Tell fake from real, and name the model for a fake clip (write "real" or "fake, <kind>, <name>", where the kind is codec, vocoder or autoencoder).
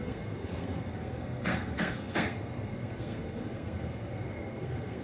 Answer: fake, codec, SNAC